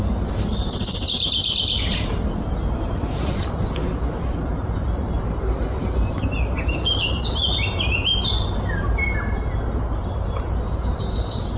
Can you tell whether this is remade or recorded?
recorded